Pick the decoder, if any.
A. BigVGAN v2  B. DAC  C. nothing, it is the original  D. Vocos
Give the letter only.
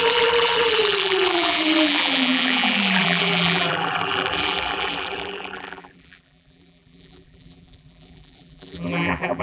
A